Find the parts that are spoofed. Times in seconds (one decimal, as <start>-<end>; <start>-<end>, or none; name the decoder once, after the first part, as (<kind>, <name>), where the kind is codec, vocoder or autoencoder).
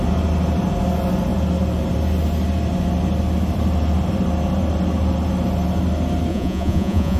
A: 6.3-7.2 (vocoder, Vocos)